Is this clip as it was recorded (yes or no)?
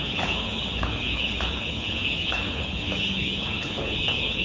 no